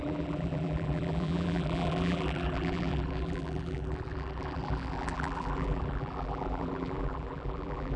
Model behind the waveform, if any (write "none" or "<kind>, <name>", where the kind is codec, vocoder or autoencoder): vocoder, BigVGAN v2